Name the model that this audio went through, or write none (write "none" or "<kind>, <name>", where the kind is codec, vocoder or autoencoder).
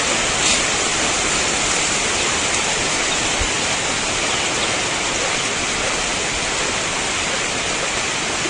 none